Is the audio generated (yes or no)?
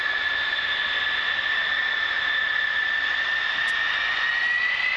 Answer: no